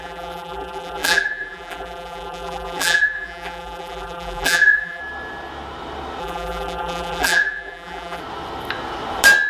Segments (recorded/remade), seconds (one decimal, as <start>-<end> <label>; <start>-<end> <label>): 0.0-5.0 remade; 5.0-6.2 recorded; 6.2-8.2 remade; 8.2-9.5 recorded